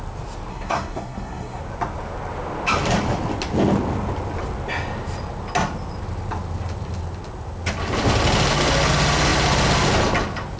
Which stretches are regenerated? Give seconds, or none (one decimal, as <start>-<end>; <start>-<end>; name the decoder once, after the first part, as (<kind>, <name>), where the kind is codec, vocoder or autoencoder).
0.5-1.6 (codec, SNAC)